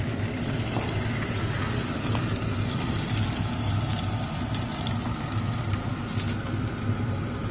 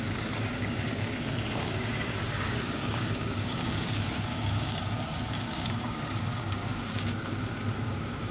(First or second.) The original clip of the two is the first